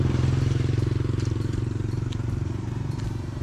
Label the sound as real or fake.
fake